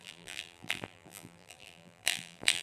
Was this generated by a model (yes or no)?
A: yes